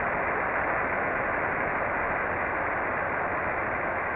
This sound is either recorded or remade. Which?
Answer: recorded